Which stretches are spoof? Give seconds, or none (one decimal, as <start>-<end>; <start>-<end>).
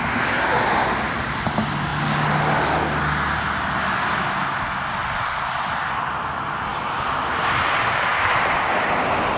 none